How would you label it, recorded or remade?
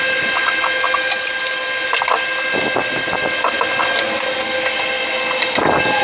recorded